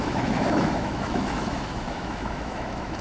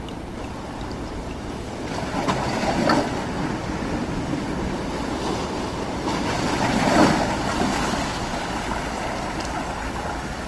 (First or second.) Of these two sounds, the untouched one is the second